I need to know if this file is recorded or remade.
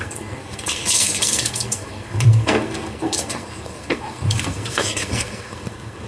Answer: remade